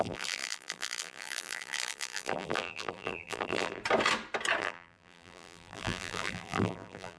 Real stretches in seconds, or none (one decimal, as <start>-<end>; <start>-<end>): 3.8-4.6

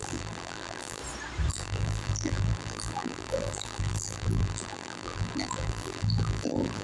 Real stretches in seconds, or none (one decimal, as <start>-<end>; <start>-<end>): 1.0-1.5

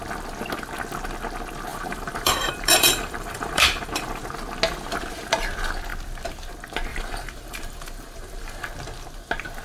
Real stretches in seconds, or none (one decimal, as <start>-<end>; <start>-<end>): 0.0-1.7; 4.2-6.9; 8.6-9.6

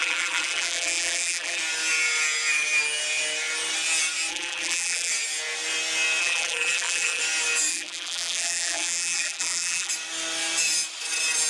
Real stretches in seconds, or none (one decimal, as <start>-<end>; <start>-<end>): 1.6-4.3; 5.1-6.2; 7.2-7.7; 9.9-11.5

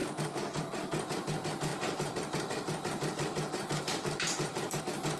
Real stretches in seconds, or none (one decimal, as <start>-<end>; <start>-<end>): 0.0-1.7; 4.8-5.2

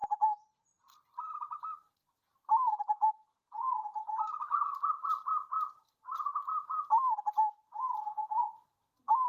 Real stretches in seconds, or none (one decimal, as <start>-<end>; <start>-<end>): 3.1-4.4; 6.6-9.3

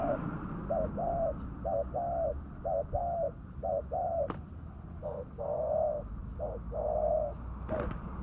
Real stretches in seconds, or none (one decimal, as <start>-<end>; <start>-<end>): 0.0-2.3; 3.0-4.1; 5.4-6.2; 7.1-8.2